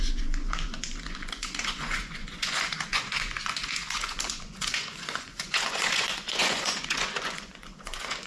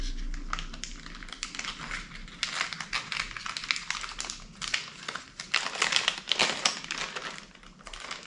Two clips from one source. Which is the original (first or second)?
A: second